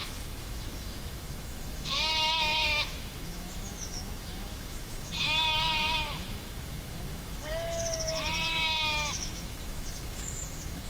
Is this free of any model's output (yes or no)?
no